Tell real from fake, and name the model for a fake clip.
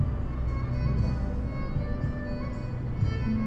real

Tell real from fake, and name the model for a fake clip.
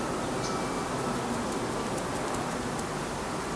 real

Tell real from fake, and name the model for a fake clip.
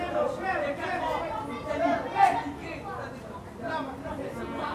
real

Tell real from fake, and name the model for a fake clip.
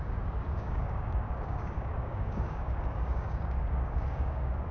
fake, codec, DAC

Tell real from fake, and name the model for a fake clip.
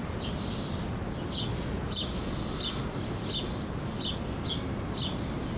real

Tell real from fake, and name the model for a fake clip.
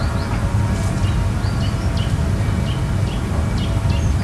real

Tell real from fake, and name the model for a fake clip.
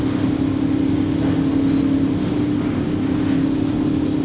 real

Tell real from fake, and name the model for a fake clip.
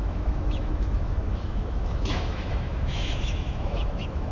fake, autoencoder, DAC-VAE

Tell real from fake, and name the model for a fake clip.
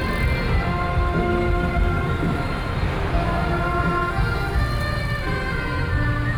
real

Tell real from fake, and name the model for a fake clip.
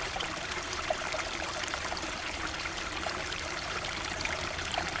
fake, vocoder, BigVGAN v2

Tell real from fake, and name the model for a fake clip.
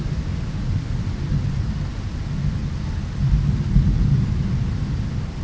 real